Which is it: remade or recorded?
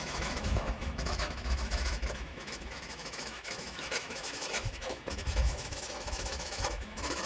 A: remade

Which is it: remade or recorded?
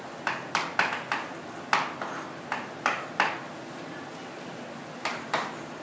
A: recorded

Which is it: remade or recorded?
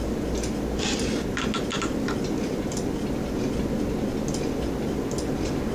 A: recorded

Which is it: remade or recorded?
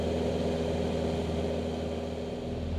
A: recorded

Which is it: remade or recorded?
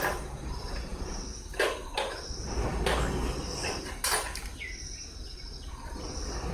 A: recorded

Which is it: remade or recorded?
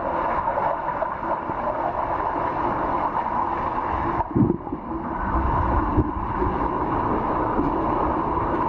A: recorded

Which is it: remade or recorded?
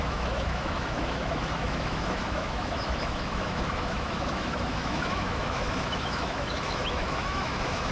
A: remade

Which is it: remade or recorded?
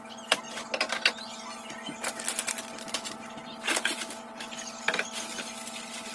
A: recorded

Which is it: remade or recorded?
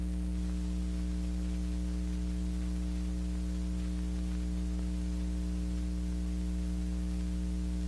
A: recorded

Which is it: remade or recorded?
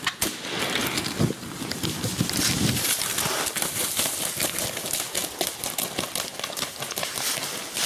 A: recorded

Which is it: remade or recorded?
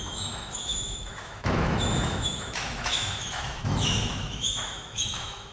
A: remade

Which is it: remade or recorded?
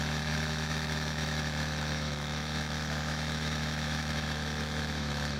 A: remade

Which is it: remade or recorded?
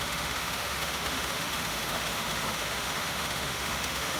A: remade